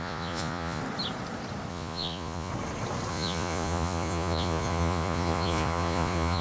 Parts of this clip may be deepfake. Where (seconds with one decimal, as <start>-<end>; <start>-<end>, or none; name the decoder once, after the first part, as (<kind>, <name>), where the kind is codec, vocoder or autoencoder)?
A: 0.0-0.8 (vocoder, Vocos); 1.7-2.5; 3.1-6.4